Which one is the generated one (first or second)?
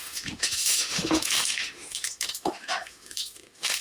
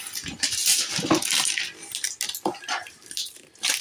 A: first